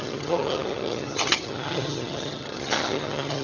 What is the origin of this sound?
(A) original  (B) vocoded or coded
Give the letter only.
B